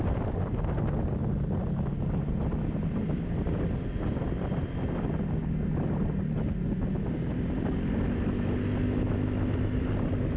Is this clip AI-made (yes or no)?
no